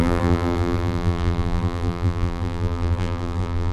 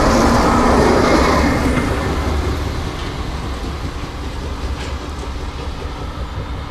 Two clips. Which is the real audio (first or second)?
second